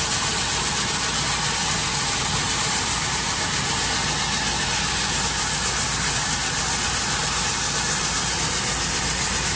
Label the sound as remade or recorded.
recorded